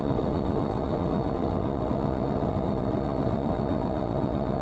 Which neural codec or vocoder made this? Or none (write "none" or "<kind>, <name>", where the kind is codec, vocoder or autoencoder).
vocoder, WaveNeXt